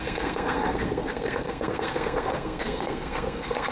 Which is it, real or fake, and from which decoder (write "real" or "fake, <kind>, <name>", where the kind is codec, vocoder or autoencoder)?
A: fake, codec, SNAC